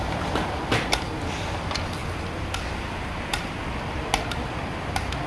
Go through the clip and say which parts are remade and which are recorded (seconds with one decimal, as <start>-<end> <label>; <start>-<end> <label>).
0.0-5.3 recorded